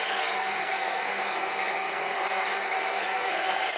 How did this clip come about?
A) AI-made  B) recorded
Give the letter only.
A